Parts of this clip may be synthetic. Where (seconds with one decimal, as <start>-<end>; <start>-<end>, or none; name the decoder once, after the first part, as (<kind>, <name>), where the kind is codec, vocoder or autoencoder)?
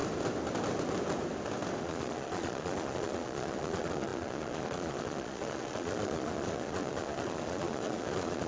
1.8-8.5 (vocoder, Vocos)